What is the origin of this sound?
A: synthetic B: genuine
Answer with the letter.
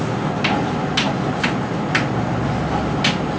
B